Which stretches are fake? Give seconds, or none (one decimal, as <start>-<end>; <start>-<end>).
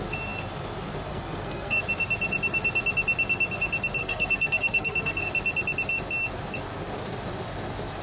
1.1-1.8; 4.0-5.2